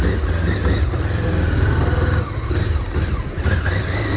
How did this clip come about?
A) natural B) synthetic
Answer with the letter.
A